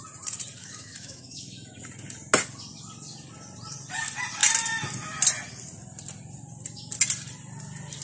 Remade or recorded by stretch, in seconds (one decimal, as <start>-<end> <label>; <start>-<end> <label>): 0.0-0.6 recorded; 0.6-1.8 remade; 1.8-8.0 recorded